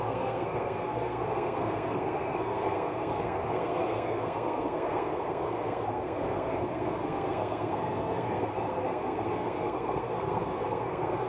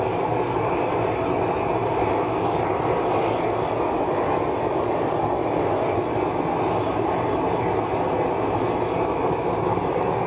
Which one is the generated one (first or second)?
first